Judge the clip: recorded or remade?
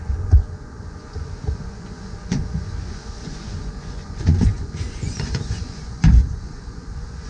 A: remade